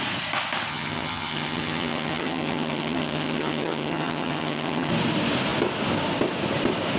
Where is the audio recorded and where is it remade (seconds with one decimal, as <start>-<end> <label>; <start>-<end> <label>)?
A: 0.0-0.7 recorded; 0.7-4.9 remade; 4.9-7.0 recorded